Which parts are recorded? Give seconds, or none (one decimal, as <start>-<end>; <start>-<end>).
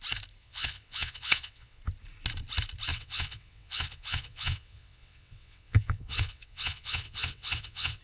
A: 0.0-0.4; 1.8-2.9